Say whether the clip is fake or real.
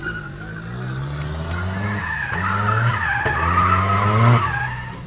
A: real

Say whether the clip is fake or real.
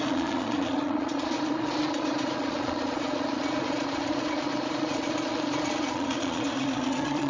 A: fake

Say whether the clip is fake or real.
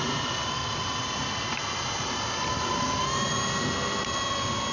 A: real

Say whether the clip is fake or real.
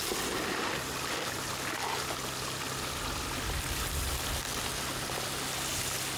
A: real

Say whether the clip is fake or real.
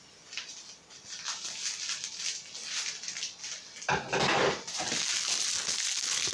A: real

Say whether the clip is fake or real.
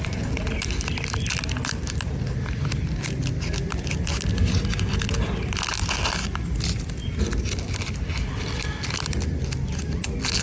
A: real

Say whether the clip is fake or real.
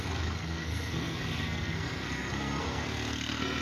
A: fake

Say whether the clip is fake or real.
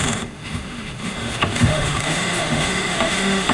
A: fake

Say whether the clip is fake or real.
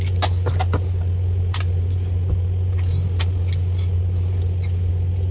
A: real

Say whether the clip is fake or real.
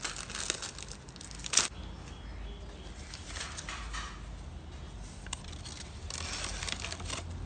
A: real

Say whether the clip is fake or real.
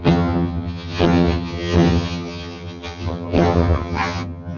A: fake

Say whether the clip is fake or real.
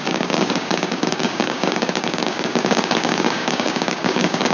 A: fake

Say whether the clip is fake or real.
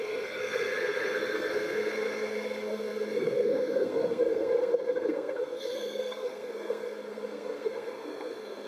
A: fake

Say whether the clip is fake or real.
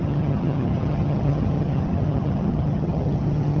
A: fake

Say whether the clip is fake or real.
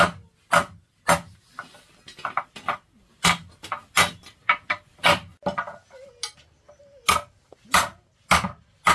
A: real